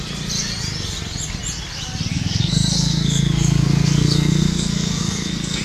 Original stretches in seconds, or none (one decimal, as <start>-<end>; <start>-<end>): 0.0-2.1